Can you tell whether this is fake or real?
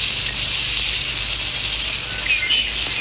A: real